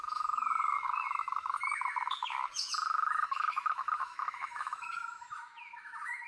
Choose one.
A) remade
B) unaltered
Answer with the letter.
A